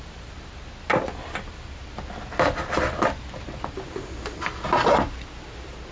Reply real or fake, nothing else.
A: real